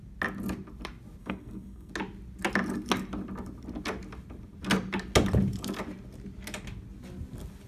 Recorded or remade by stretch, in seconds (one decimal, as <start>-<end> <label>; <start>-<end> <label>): 0.0-1.2 recorded; 1.2-1.9 remade; 1.9-7.7 recorded